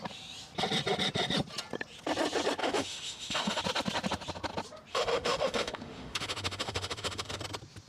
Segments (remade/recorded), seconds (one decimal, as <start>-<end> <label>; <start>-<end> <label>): 0.0-2.6 recorded; 2.6-3.6 remade; 3.6-4.9 recorded; 4.9-7.4 remade; 7.4-7.9 recorded